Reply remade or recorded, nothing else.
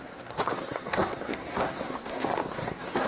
remade